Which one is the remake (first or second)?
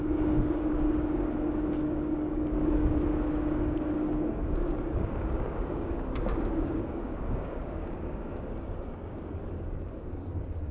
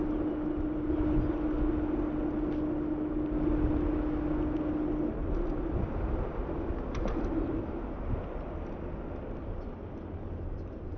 first